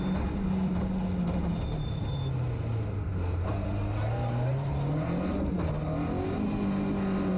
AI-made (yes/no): no